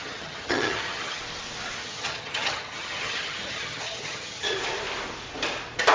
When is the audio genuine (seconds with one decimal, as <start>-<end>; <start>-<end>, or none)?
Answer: 1.2-1.8; 4.6-5.9